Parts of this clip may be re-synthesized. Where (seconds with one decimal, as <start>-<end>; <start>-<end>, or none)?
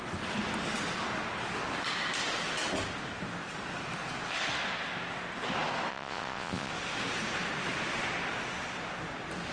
5.9-6.7